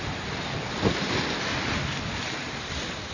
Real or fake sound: real